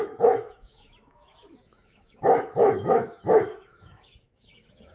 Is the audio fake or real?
fake